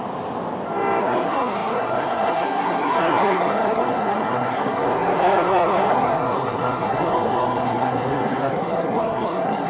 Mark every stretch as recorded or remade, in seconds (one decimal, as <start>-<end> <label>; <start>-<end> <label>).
0.0-1.0 recorded; 1.0-9.7 remade